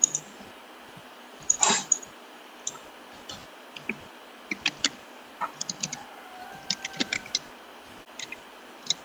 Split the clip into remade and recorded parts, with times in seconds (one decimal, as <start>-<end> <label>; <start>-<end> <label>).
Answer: 0.0-1.0 recorded; 1.0-2.4 remade; 2.4-9.0 recorded